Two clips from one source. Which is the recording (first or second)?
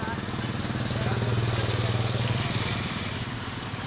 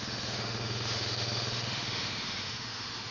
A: first